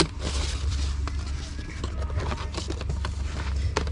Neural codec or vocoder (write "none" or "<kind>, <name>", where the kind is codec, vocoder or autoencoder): none